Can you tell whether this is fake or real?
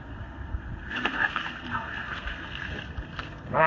fake